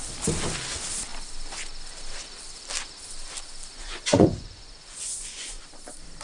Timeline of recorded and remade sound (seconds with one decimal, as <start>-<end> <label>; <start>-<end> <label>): 0.0-3.7 recorded; 3.7-5.6 remade; 5.6-6.2 recorded

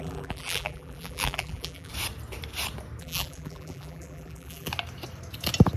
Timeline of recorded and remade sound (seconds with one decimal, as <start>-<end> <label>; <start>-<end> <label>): 0.0-1.9 remade; 1.9-3.0 recorded; 3.0-4.7 remade; 4.7-5.8 recorded

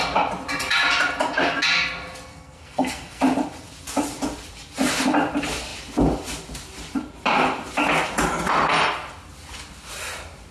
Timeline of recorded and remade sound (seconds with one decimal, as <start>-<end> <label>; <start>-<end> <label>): 0.0-2.3 recorded; 2.3-3.2 remade; 3.2-10.5 recorded

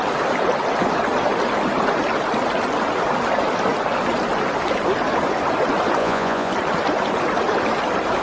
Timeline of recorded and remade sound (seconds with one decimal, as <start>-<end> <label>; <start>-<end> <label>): 0.0-6.0 recorded; 6.0-6.5 remade; 6.5-8.2 recorded

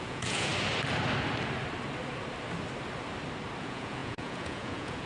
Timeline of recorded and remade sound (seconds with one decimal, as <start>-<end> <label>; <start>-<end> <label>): 0.0-0.5 remade; 0.5-3.6 recorded; 3.6-5.1 remade

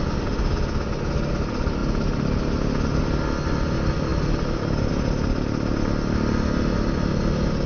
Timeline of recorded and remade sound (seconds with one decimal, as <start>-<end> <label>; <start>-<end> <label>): 0.0-7.7 recorded